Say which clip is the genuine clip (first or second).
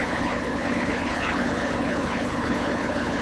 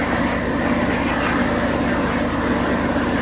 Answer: second